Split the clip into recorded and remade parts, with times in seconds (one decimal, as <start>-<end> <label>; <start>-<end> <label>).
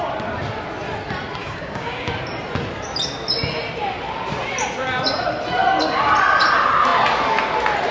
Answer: 0.0-1.4 recorded; 1.4-2.1 remade; 2.1-7.9 recorded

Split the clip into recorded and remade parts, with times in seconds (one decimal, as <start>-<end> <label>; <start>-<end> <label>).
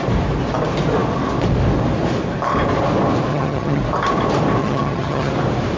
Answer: 0.0-3.3 recorded; 3.3-3.8 remade; 3.8-4.6 recorded; 4.6-5.3 remade; 5.3-5.8 recorded